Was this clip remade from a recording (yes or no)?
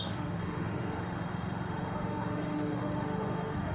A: yes